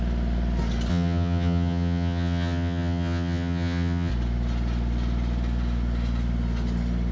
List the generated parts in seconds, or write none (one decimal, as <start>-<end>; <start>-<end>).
0.9-4.1

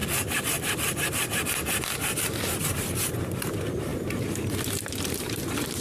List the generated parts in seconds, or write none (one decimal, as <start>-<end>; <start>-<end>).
2.6-5.8

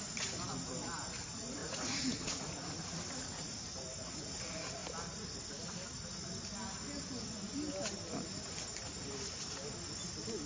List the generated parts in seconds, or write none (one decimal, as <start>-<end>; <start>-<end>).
1.6-3.5

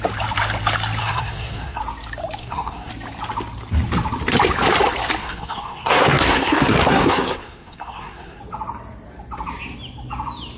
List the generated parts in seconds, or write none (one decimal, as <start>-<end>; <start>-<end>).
1.0-1.8; 2.4-2.9; 5.2-8.4

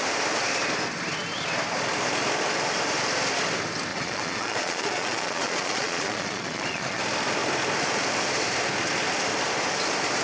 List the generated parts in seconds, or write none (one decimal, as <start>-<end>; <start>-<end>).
3.9-7.0

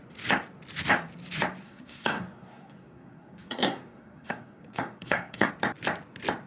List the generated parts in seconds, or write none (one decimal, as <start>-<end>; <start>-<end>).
1.6-5.5

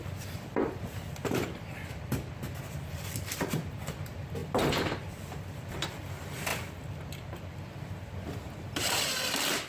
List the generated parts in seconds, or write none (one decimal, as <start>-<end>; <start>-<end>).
0.0-4.4; 5.2-6.5; 9.0-9.7

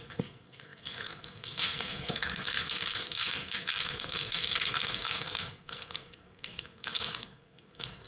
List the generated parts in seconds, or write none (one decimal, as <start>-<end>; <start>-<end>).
0.0-8.1